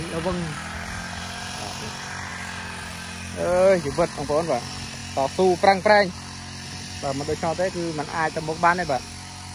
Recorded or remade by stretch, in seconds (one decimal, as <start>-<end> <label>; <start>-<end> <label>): 0.0-8.1 recorded; 8.1-9.1 remade; 9.1-9.5 recorded